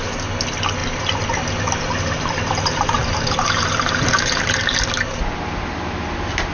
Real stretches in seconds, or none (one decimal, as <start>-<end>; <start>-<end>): 0.0-0.8; 4.4-6.5

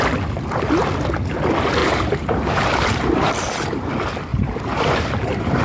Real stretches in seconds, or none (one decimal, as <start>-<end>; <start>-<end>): 0.0-1.8; 3.9-4.3

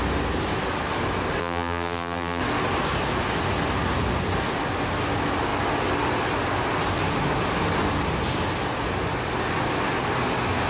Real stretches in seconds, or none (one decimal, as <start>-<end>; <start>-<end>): 0.0-1.4; 2.4-10.7

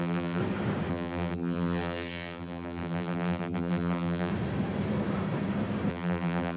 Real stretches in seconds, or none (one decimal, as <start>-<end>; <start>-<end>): 0.4-0.9; 4.3-5.9

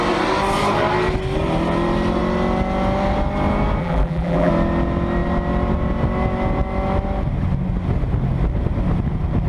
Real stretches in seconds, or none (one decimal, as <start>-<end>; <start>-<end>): 0.0-3.8; 4.5-9.5

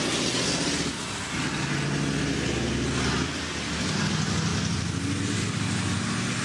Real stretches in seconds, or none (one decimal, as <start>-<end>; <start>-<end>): 0.0-6.4